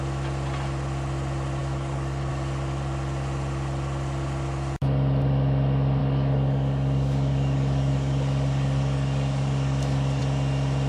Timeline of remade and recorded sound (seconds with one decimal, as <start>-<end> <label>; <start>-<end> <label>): 0.0-1.6 recorded; 1.6-2.3 remade; 2.3-6.0 recorded; 6.0-10.2 remade; 10.2-10.9 recorded